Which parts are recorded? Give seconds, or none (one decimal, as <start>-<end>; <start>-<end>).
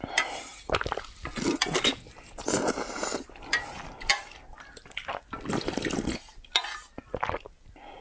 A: 0.0-8.0